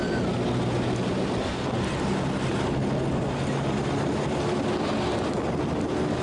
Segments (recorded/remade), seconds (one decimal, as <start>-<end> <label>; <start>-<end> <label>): 0.0-6.2 recorded